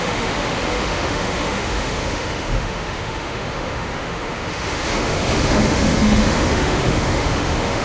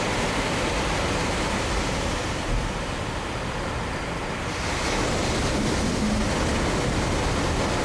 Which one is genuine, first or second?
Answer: second